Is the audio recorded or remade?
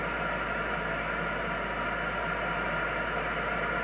recorded